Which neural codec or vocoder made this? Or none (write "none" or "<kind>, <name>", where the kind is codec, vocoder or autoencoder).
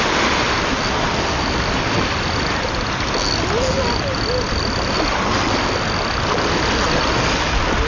none